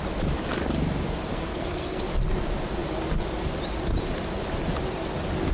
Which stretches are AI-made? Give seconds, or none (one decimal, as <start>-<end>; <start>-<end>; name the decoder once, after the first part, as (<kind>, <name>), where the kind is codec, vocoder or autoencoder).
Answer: 1.3-2.0 (codec, SNAC)